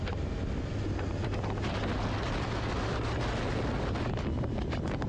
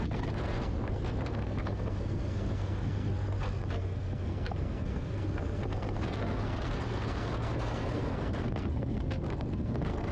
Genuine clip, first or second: first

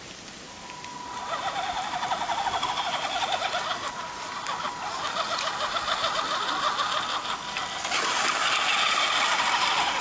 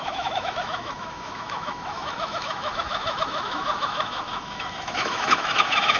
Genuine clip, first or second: first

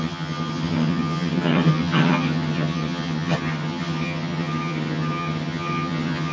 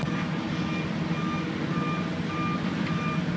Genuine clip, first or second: second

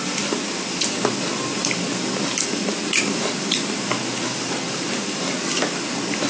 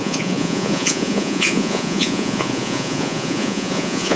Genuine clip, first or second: first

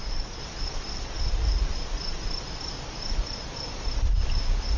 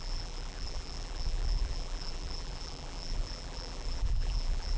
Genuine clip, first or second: first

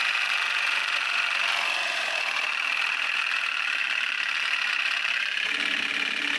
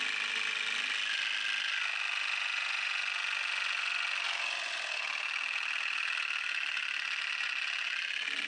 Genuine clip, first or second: second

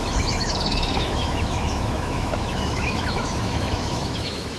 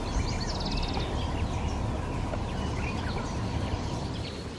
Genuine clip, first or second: second